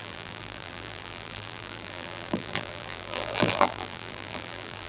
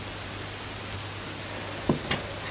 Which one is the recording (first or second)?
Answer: second